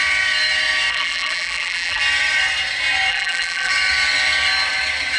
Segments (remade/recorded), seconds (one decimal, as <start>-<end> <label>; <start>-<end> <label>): 0.0-0.9 recorded; 0.9-2.0 remade; 2.0-3.1 recorded; 3.1-3.7 remade; 3.7-5.2 recorded